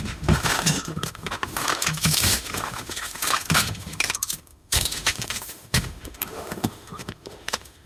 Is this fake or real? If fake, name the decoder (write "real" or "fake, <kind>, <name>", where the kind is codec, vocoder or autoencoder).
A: fake, autoencoder, DAC-VAE